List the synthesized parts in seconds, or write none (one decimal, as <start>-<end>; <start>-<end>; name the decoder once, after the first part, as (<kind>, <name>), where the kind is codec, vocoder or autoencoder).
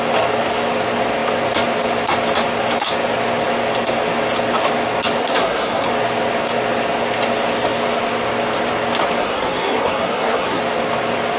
5.2-5.9 (codec, SNAC); 9.2-10.6